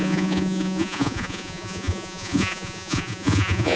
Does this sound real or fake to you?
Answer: fake